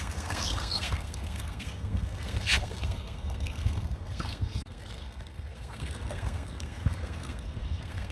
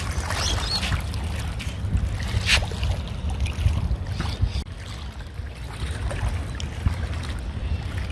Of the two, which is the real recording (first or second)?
second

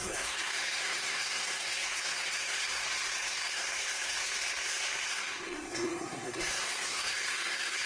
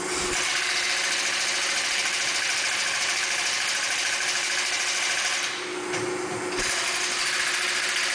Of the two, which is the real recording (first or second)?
second